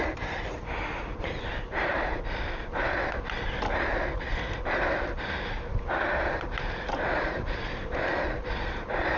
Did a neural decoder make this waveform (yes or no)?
no